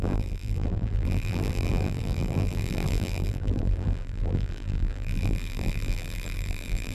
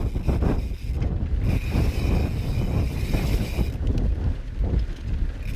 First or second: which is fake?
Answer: first